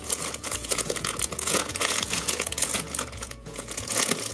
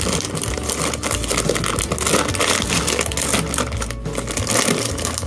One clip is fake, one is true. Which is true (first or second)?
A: second